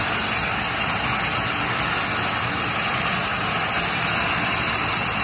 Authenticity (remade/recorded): remade